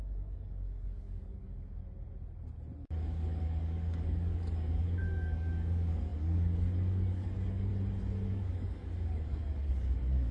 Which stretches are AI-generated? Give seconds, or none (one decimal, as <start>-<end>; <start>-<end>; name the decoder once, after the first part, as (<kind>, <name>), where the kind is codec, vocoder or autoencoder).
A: 0.0-1.8 (codec, DAC); 3.0-7.7; 8.3-10.3